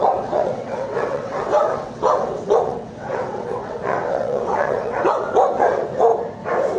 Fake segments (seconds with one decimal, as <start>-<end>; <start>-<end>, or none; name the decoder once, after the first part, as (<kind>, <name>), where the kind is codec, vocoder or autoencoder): 0.0-6.1 (vocoder, WaveNeXt)